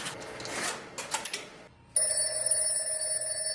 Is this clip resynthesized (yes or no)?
no